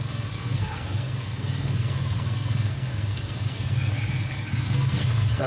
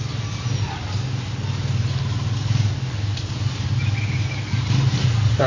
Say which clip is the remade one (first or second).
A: first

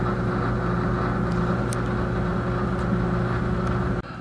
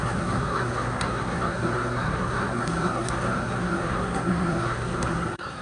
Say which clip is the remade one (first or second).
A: second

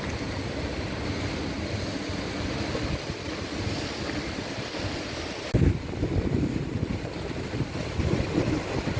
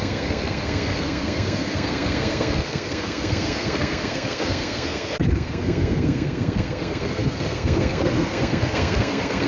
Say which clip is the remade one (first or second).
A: second